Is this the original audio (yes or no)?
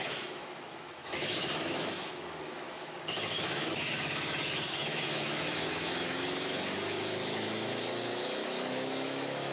no